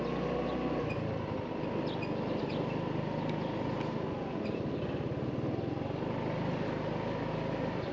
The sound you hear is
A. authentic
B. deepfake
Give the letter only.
A